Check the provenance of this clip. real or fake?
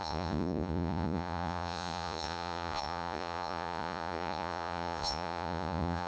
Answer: fake